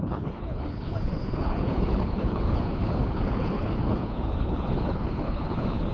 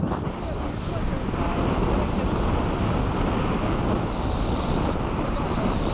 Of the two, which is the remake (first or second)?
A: first